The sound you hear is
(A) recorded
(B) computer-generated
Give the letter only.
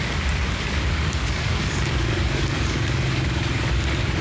B